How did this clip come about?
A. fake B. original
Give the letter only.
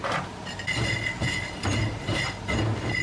A